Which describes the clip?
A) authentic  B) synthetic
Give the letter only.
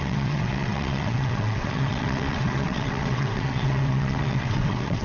B